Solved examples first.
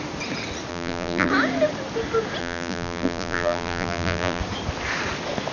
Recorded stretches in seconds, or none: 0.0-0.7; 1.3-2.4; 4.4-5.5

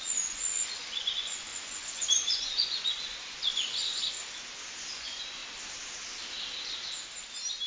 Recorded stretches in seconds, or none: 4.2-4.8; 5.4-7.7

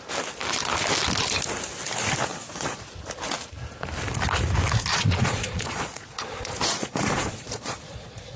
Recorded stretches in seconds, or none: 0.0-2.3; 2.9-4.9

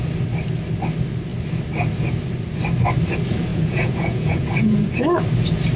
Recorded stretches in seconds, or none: 0.0-3.5; 4.9-5.8

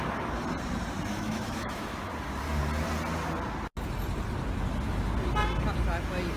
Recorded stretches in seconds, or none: 0.0-1.1; 2.1-6.4

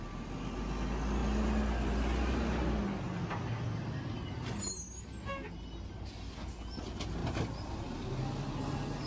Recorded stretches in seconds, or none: 0.0-9.1

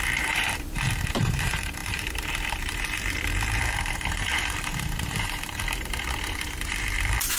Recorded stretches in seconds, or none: none